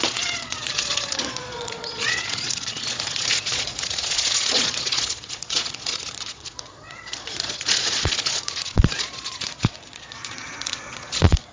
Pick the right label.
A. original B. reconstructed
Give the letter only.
B